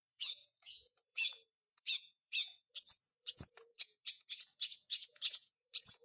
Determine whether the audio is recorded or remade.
remade